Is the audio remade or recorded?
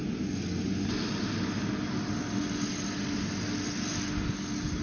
recorded